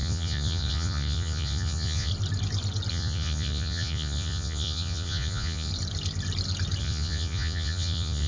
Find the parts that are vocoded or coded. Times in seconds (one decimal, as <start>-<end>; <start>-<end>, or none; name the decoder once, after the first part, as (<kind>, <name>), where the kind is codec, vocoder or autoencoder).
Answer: 0.0-2.1 (vocoder, Vocos); 2.9-5.7; 6.8-8.3